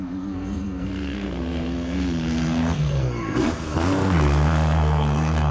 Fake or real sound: fake